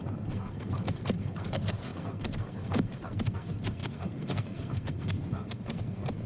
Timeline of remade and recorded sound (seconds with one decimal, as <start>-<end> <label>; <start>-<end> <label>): 0.0-6.3 remade